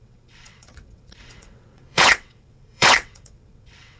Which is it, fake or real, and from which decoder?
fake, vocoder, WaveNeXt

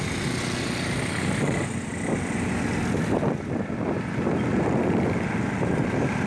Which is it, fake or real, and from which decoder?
real